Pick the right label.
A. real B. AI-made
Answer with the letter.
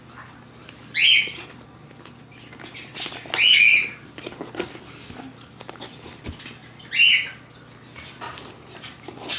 A